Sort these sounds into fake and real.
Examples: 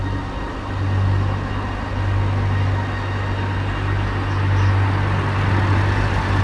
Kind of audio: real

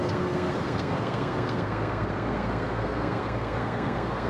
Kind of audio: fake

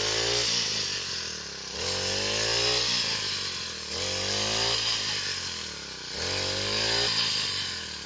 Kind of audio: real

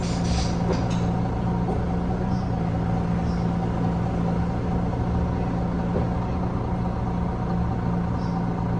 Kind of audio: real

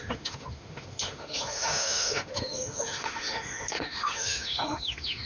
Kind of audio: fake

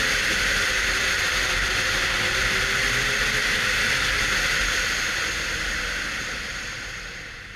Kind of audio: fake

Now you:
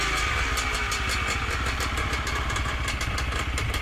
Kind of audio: real